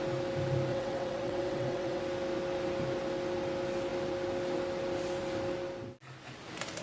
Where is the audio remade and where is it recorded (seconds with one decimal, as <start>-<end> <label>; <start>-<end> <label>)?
0.0-0.7 recorded; 0.7-2.0 remade; 2.0-6.8 recorded